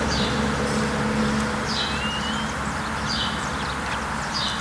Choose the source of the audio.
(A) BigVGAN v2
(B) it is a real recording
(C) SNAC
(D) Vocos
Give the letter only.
A